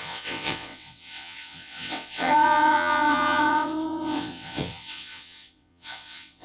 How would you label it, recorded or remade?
remade